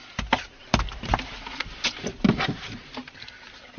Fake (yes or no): no